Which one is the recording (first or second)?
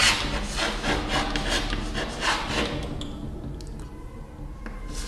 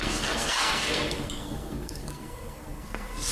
first